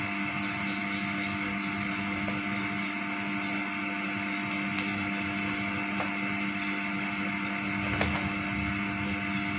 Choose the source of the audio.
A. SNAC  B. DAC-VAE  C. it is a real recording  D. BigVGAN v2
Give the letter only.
C